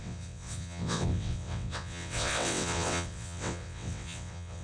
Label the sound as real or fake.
fake